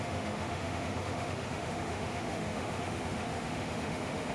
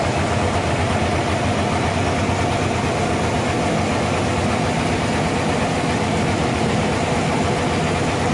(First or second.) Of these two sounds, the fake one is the first